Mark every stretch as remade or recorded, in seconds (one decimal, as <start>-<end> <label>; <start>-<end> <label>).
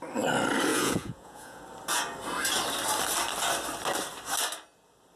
0.0-0.7 recorded; 0.7-1.6 remade; 1.6-5.2 recorded